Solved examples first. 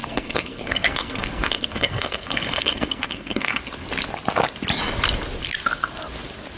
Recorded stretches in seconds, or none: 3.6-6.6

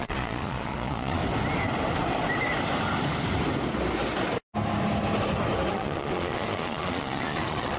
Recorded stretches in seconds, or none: 1.2-5.7

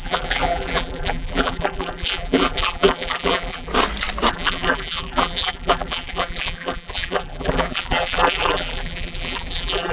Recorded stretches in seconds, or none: 3.7-4.3

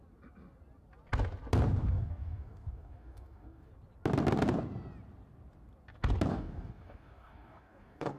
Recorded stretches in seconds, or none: 0.0-1.8; 3.7-6.3

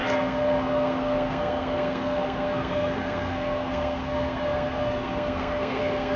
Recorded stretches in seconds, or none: none

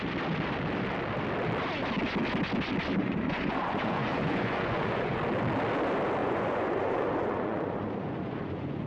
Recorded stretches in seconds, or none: 0.0-3.0; 5.2-6.2